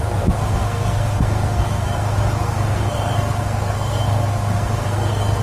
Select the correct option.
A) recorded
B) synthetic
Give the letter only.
B